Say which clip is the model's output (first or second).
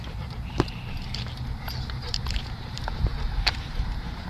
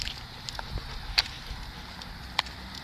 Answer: first